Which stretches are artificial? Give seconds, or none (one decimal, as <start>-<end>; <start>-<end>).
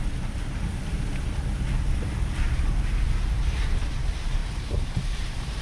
0.0-0.7; 3.3-5.6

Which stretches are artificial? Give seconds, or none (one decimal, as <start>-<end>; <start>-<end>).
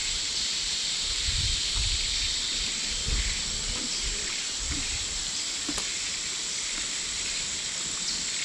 0.0-1.6; 3.9-5.6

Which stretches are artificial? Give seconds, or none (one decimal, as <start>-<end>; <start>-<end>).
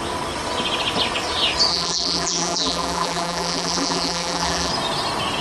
1.7-4.7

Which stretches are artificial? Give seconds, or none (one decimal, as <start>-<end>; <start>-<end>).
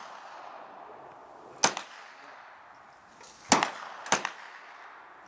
none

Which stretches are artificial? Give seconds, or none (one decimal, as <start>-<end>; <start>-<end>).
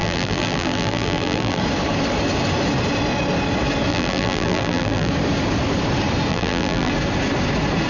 0.0-1.6; 3.9-5.1; 6.3-6.9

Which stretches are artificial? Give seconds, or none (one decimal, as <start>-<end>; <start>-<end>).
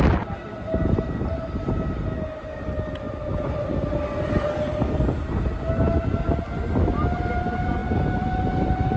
none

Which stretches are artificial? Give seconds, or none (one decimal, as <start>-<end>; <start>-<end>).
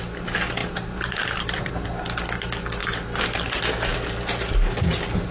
0.6-1.7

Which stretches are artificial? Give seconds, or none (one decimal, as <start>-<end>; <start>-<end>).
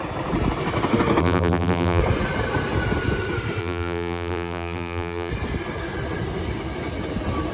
1.2-2.0; 3.6-5.3